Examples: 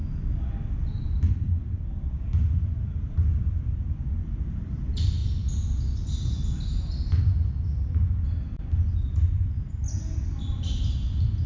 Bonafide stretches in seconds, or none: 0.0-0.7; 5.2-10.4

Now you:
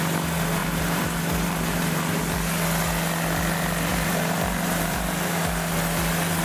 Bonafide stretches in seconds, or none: 0.0-0.6; 2.2-3.9; 5.4-6.4